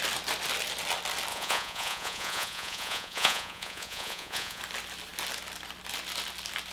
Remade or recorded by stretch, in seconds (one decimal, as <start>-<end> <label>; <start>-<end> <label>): 0.0-1.3 recorded; 1.3-4.6 remade; 4.6-6.7 recorded